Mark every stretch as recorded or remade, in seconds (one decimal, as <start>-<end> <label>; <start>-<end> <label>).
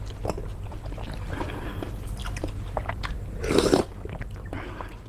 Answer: 0.0-0.5 recorded; 0.5-1.5 remade; 1.5-2.2 recorded; 2.2-4.2 remade; 4.2-5.1 recorded